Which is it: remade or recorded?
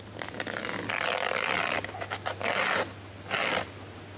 recorded